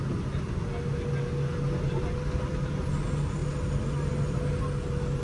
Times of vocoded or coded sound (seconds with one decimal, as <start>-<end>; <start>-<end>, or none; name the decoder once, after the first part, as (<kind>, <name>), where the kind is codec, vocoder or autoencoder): none